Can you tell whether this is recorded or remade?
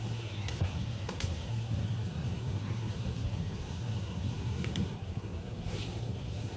remade